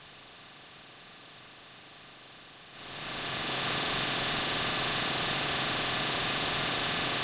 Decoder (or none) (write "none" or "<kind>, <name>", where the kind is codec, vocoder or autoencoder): vocoder, Vocos